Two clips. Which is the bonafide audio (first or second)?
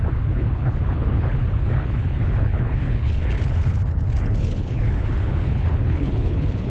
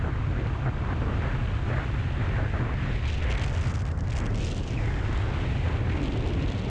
second